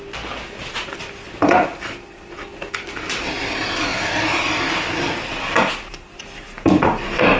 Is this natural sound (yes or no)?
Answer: no